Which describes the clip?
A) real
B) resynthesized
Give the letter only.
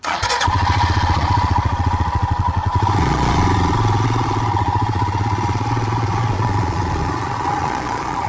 B